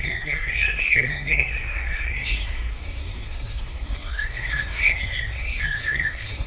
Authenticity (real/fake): fake